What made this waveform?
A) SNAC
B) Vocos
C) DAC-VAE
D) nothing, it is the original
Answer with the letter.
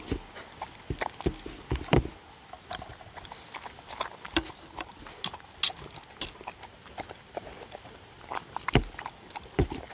D